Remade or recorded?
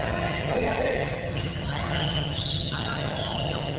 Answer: remade